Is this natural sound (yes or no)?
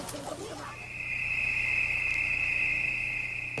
yes